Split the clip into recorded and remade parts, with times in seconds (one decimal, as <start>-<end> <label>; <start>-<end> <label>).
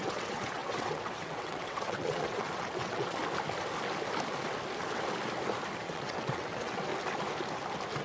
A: 0.0-3.2 remade; 3.2-5.8 recorded; 5.8-6.9 remade; 6.9-8.0 recorded